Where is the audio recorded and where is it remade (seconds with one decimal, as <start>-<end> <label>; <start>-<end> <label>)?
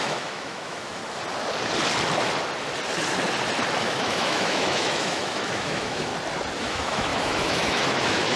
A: 0.0-1.0 remade; 1.0-3.8 recorded; 3.8-6.1 remade; 6.1-6.6 recorded; 6.6-8.4 remade